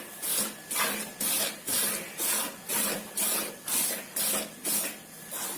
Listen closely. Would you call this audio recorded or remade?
recorded